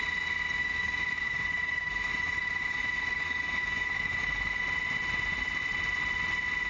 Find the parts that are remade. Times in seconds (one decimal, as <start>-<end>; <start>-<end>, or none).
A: 0.6-4.6

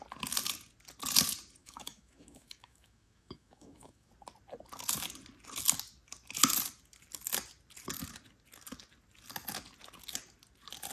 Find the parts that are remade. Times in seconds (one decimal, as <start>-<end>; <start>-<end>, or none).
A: 1.6-4.1

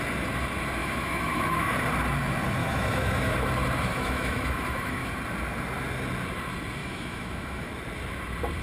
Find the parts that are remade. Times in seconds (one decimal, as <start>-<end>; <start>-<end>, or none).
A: 0.8-1.7; 2.6-3.5; 3.9-5.1; 6.8-7.7

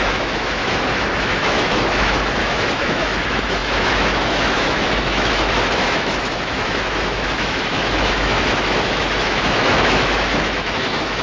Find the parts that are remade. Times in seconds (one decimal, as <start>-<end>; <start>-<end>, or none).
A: 0.0-11.2

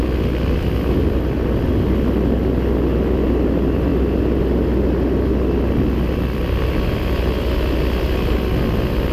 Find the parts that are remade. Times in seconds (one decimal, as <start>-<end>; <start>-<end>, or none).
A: none